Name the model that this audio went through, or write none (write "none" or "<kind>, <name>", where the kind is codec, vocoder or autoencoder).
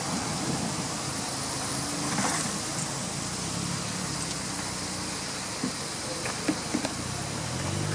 none